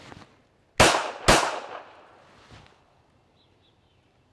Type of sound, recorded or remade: recorded